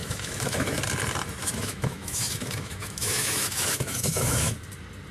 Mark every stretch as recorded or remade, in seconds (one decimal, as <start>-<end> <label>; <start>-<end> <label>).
0.0-0.8 remade; 0.8-1.4 recorded; 1.4-4.5 remade; 4.5-5.1 recorded